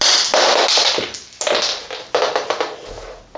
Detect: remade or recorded recorded